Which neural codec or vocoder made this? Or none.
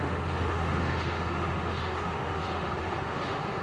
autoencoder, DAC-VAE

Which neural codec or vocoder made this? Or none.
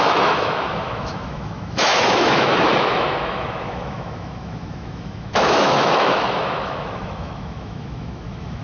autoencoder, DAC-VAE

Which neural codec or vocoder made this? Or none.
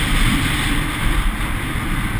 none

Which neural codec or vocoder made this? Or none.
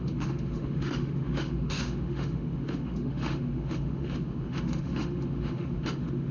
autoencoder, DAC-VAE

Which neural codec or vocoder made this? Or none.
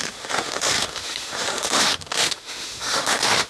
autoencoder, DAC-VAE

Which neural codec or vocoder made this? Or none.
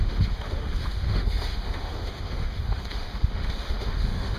autoencoder, DAC-VAE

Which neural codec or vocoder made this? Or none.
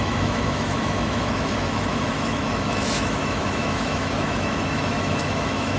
autoencoder, DAC-VAE